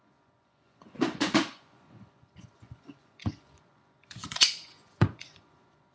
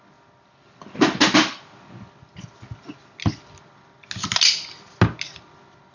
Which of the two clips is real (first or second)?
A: second